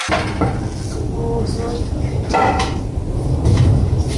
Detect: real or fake real